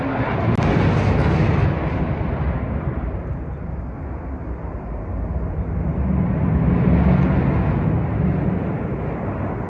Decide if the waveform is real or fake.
real